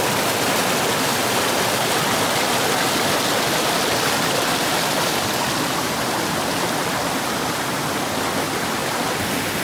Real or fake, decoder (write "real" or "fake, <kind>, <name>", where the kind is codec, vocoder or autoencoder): real